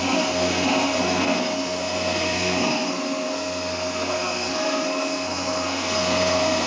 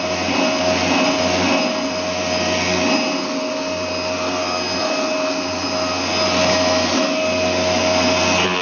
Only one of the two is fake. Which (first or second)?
first